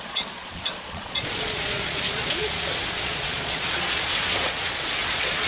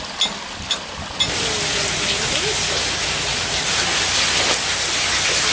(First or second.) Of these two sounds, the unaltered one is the second